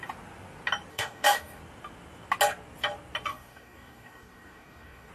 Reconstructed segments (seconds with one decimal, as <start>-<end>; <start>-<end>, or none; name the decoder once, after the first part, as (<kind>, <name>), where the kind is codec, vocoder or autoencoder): 0.9-1.6 (codec, DAC); 3.3-5.1